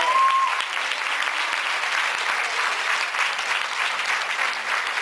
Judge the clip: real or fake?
real